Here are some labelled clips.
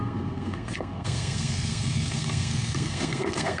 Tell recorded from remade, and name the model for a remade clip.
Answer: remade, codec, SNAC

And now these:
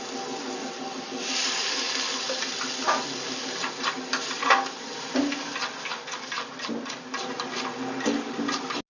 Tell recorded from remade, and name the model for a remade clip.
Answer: recorded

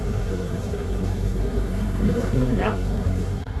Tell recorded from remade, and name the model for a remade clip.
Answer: remade, codec, SNAC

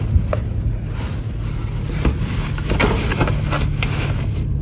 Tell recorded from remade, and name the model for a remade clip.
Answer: recorded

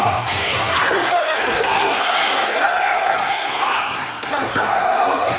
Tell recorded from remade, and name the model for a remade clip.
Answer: remade, codec, SNAC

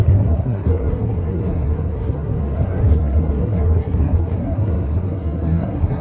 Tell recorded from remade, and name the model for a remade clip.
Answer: remade, codec, SNAC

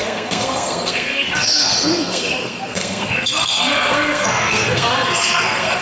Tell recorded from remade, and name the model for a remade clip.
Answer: remade, codec, SNAC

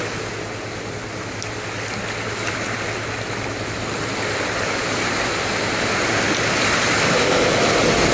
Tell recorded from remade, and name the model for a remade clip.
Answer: recorded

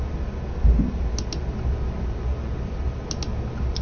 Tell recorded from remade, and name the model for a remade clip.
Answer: recorded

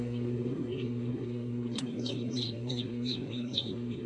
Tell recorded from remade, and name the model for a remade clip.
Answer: remade, codec, SNAC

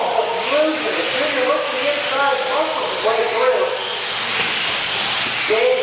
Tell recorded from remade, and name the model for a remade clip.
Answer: recorded